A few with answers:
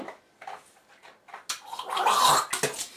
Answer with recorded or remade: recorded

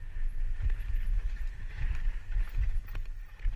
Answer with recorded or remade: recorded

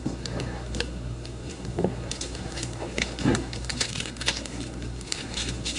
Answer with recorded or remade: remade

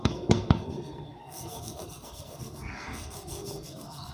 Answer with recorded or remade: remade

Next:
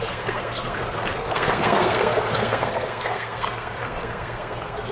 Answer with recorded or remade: remade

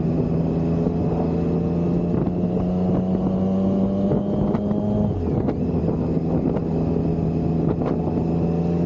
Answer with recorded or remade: recorded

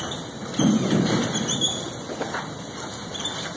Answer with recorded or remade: recorded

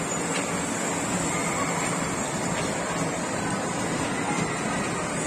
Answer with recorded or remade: recorded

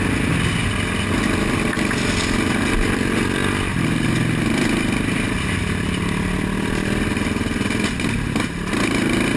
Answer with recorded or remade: recorded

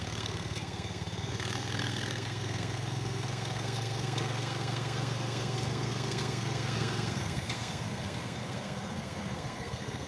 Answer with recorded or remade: remade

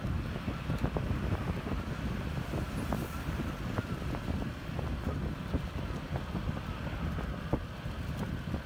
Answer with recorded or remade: recorded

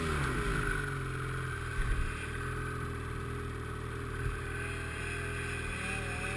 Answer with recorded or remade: recorded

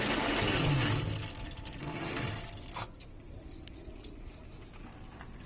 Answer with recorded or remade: recorded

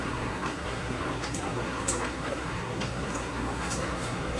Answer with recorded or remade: remade